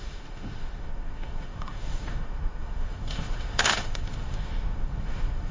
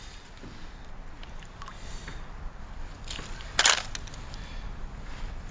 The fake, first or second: first